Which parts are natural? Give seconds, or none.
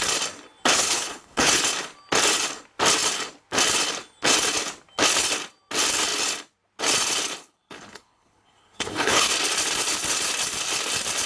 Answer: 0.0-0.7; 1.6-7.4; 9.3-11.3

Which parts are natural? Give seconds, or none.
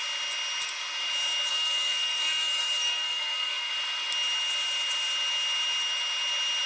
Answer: 0.0-1.5; 3.7-6.7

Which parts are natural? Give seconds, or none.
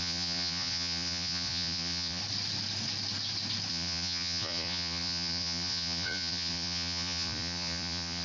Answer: 2.2-3.7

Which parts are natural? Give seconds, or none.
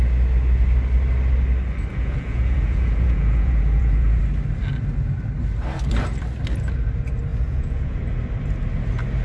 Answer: 0.0-1.9; 4.2-7.3; 8.0-9.2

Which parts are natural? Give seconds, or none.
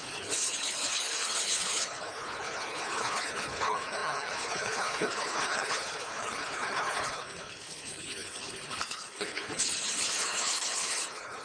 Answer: none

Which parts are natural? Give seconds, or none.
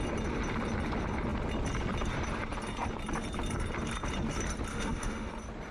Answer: 0.0-4.7; 5.3-5.7